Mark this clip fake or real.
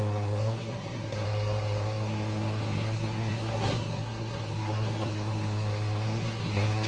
fake